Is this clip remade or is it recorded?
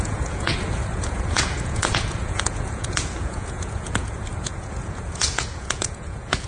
remade